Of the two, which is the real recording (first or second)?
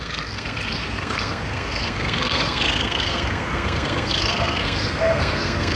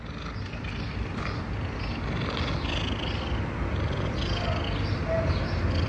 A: second